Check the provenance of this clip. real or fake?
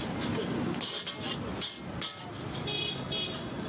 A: real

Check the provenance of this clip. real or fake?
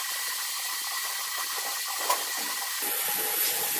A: real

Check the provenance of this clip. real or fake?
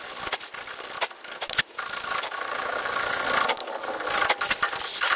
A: real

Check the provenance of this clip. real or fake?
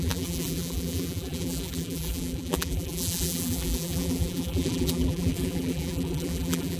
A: fake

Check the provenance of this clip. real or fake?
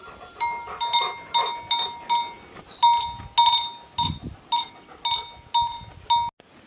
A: real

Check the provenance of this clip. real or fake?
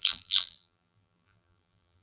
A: fake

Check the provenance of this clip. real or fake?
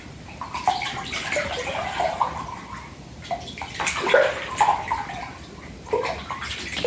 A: real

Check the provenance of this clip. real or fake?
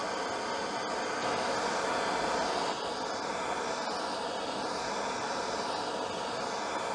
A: real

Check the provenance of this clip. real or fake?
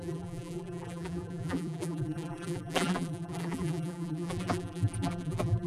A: fake